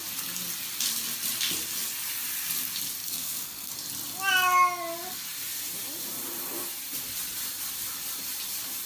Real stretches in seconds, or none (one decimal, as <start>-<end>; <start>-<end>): 0.0-3.0; 3.7-8.9